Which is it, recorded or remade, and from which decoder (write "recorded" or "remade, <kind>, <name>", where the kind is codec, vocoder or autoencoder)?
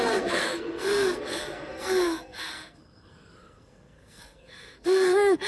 remade, codec, SNAC